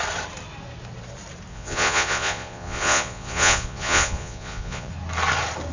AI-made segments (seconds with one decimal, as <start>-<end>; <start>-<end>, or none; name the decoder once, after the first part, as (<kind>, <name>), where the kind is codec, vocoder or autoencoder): 1.5-4.9 (vocoder, Vocos)